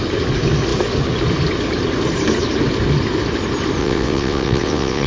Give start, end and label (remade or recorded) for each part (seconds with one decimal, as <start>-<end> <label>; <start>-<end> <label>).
0.0-3.8 recorded; 3.8-5.1 remade